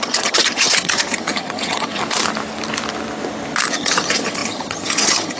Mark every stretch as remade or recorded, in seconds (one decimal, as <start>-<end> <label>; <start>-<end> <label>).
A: 0.0-2.0 remade; 2.0-3.7 recorded; 3.7-5.4 remade